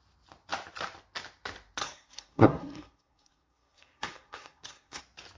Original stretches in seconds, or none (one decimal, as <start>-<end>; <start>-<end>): 0.0-1.8; 5.0-5.4